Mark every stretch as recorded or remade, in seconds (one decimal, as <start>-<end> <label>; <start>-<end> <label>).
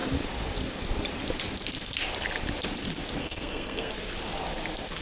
0.0-3.2 recorded; 3.2-3.9 remade; 3.9-5.0 recorded